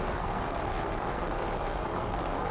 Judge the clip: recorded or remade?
remade